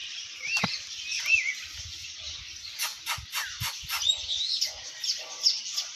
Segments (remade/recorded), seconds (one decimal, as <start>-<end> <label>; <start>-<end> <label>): 0.0-6.0 recorded